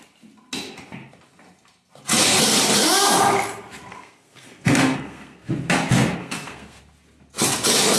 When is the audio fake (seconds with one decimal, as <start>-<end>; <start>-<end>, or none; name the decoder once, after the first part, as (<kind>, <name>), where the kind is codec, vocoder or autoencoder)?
3.9-5.5 (codec, SNAC); 6.2-6.8